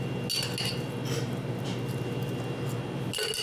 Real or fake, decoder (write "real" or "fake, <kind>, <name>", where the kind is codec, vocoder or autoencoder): real